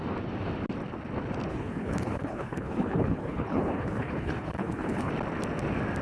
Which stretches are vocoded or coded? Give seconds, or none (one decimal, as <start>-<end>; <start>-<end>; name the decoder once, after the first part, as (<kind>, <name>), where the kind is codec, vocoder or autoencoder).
1.5-5.1 (codec, HILCodec)